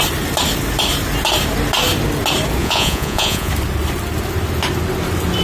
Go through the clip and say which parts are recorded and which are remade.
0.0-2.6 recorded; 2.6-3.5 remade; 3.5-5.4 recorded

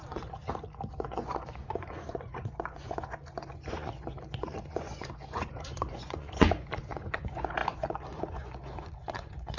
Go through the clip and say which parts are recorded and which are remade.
0.0-0.4 remade; 0.4-0.9 recorded; 0.9-9.6 remade